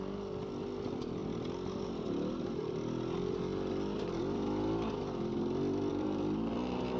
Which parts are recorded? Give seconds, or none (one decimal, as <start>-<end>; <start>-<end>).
0.0-5.9

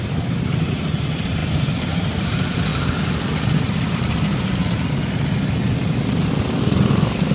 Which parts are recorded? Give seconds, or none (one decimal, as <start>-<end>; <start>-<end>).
1.4-1.9; 2.7-6.6

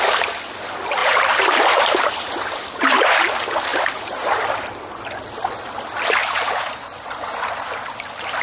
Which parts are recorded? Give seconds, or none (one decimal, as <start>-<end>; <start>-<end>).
0.0-1.0; 3.2-3.7; 4.9-6.2; 7.7-8.4

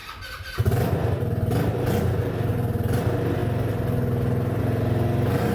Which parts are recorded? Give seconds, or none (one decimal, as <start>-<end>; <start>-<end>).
0.0-5.5

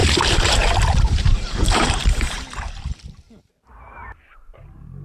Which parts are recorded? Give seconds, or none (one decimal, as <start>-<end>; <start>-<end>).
2.4-5.0

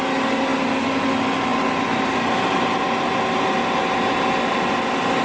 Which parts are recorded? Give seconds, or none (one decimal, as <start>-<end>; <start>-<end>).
0.0-5.2

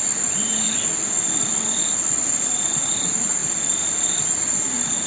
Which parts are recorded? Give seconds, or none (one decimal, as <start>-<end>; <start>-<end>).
0.5-2.8; 3.4-4.0